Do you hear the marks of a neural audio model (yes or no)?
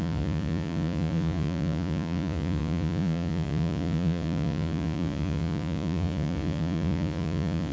yes